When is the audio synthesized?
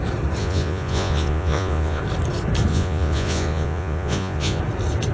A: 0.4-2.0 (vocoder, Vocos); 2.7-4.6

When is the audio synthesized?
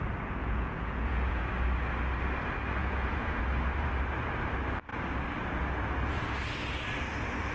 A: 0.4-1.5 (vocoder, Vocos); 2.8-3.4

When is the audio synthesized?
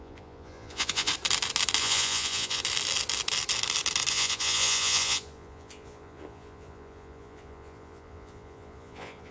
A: 0.0-1.1 (vocoder, Vocos); 1.8-2.6; 4.1-9.3